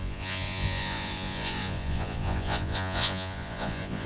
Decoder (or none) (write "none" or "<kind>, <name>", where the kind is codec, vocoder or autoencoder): vocoder, Vocos